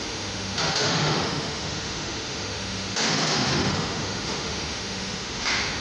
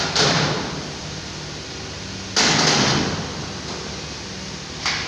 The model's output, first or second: first